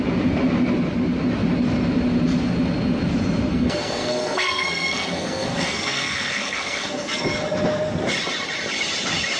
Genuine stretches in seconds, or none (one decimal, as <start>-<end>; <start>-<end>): 0.0-3.5; 7.2-9.4